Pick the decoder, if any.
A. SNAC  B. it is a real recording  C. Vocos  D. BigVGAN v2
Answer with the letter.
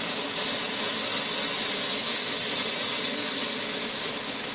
B